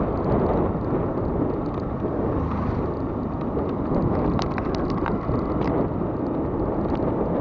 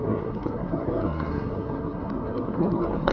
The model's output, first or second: second